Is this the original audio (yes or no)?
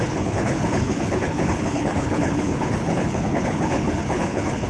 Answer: no